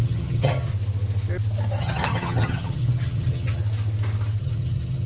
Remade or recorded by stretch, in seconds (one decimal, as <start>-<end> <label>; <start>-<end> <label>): 0.0-0.7 remade; 0.7-1.8 recorded; 1.8-3.6 remade; 3.6-4.4 recorded; 4.4-5.1 remade

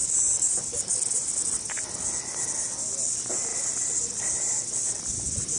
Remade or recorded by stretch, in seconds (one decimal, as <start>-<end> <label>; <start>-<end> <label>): 0.0-1.7 remade; 1.7-3.5 recorded; 3.5-4.3 remade; 4.3-5.6 recorded

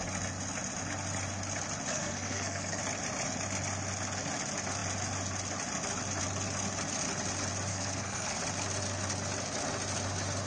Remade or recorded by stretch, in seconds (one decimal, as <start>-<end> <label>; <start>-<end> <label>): 0.0-1.9 recorded; 1.9-2.8 remade; 2.8-7.7 recorded; 7.7-8.4 remade; 8.4-10.5 recorded

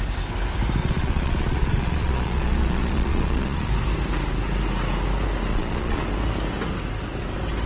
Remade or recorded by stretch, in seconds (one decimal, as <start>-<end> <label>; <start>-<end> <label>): 0.0-0.8 recorded; 0.8-3.7 remade; 3.7-5.5 recorded; 5.5-6.0 remade; 6.0-7.7 recorded

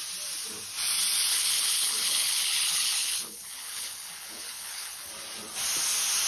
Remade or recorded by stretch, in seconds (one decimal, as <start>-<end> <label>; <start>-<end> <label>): 0.0-1.3 recorded; 1.3-5.1 remade; 5.1-6.3 recorded

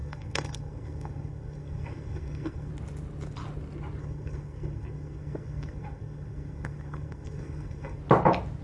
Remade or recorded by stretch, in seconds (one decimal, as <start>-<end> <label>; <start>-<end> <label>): 0.0-2.7 remade; 2.7-4.0 recorded; 4.0-8.0 remade; 8.0-8.6 recorded